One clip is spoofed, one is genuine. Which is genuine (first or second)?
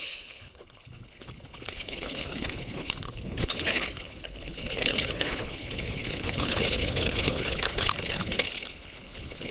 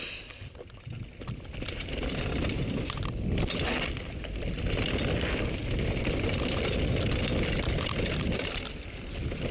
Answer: second